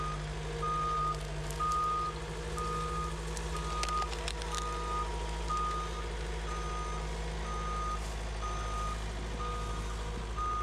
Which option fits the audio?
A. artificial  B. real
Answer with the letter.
B